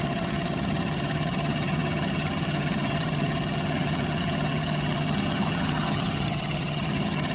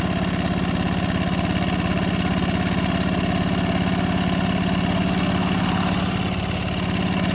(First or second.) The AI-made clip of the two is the first